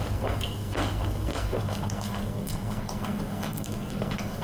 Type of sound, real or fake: fake